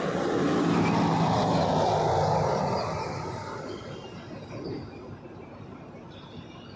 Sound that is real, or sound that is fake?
real